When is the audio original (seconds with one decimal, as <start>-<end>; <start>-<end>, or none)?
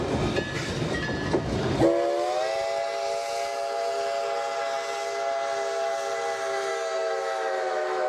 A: 0.0-6.7